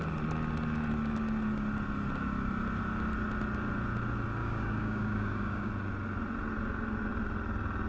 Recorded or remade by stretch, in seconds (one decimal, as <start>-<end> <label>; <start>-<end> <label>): 0.0-4.4 recorded; 4.4-5.7 remade; 5.7-7.9 recorded